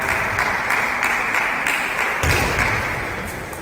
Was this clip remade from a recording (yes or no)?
no